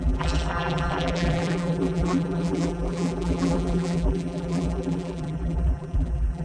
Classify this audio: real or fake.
fake